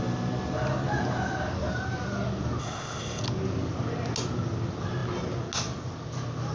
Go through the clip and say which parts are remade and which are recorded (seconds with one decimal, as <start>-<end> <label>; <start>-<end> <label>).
0.0-2.6 recorded; 2.6-3.2 remade; 3.2-6.5 recorded